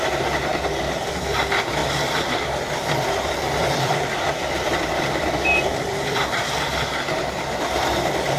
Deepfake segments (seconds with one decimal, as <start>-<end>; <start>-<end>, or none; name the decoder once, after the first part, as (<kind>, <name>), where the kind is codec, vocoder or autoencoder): 1.8-6.4 (vocoder, BigVGAN v2)